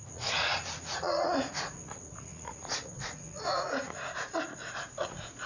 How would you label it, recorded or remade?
remade